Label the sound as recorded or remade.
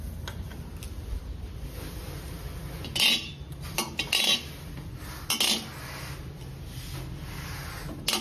recorded